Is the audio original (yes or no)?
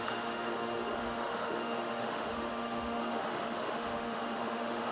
no